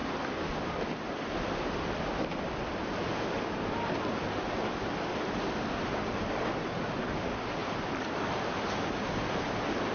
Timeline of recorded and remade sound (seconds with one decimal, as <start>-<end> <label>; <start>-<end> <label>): 0.0-9.9 recorded